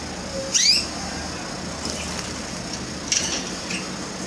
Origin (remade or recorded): recorded